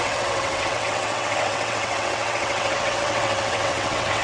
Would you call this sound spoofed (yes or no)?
yes